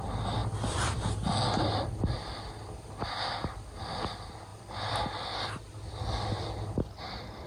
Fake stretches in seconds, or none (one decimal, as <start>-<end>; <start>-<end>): 0.4-1.1; 4.5-5.9